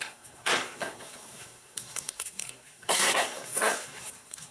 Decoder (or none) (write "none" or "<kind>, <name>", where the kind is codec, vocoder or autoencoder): codec, SNAC